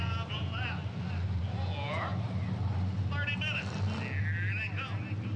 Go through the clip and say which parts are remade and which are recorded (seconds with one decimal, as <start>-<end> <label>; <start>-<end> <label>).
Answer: 0.0-0.8 recorded; 0.8-1.4 remade; 1.4-5.4 recorded